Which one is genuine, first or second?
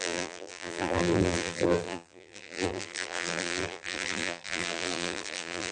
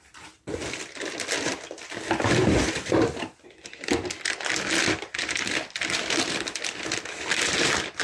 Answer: second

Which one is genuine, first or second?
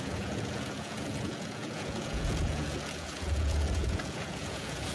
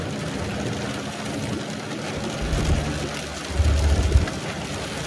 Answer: second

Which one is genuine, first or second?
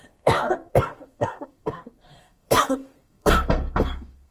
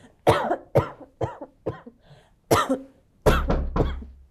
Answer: second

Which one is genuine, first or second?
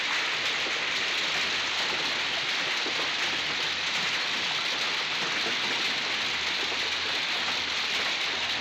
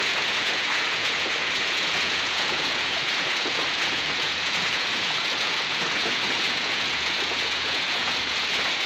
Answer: first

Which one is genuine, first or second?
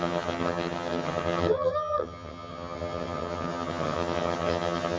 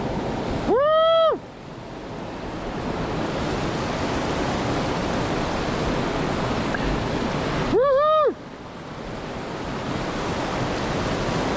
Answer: second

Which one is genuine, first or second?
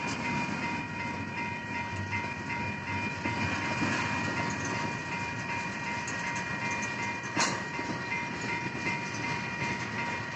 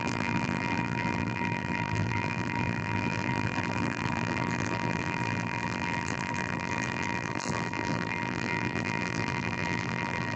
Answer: first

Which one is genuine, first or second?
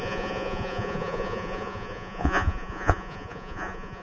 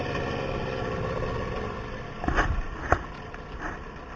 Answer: second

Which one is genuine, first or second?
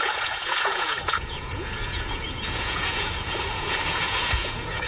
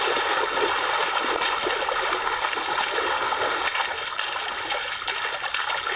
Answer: second